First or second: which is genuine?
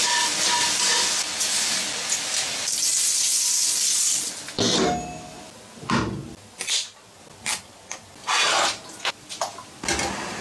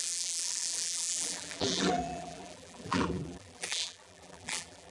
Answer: first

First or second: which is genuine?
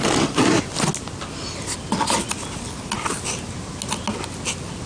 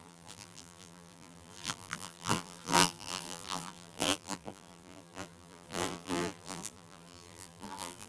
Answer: first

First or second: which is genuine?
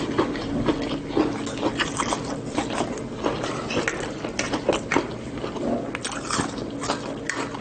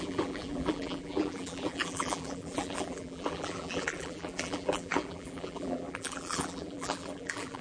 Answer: first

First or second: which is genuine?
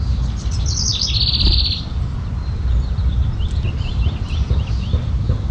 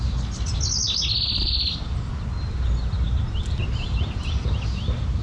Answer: second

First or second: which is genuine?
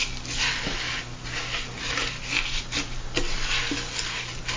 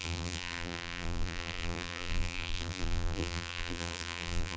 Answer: first